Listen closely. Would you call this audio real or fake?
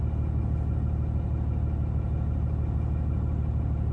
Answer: real